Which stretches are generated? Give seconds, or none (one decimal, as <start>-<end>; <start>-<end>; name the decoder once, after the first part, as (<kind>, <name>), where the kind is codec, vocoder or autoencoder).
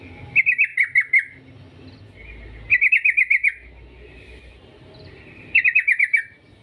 none